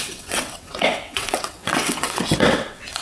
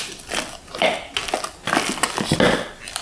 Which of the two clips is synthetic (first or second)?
first